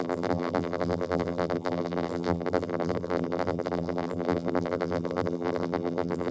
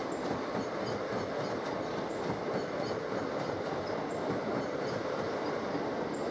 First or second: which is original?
second